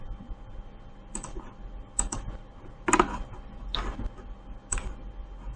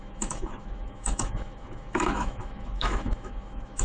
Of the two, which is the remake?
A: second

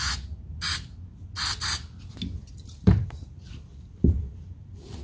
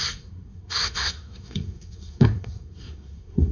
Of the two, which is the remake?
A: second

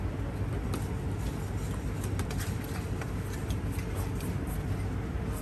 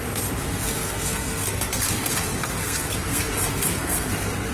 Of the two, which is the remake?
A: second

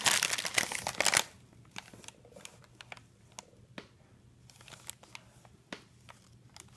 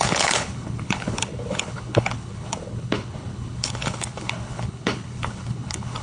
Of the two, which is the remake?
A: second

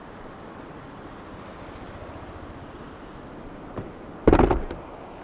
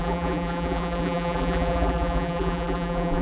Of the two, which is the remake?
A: second